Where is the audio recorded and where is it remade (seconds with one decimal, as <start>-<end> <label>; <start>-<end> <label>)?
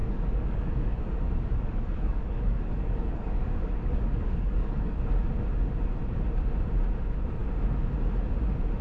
0.0-5.0 remade; 5.0-8.8 recorded